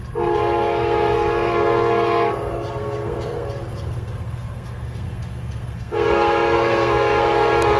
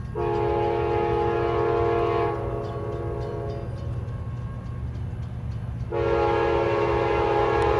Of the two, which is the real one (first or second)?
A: second